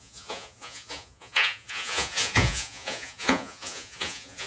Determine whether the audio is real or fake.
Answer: fake